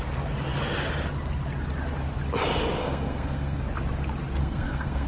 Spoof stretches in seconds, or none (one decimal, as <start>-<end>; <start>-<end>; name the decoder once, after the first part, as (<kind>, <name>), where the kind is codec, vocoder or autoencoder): 2.8-3.6 (codec, SNAC); 4.4-5.1